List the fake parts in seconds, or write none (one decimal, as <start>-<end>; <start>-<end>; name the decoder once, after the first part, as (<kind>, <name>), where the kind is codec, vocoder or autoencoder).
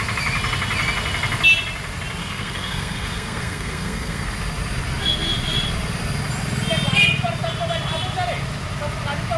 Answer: 2.2-4.3 (codec, SNAC)